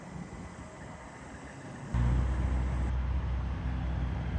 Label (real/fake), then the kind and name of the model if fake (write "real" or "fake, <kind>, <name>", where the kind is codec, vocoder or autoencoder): real